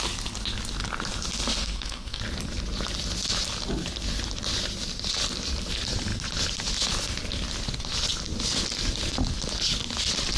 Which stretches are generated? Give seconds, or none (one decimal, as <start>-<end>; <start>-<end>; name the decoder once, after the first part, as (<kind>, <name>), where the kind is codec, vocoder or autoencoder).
1.6-2.2 (codec, SNAC)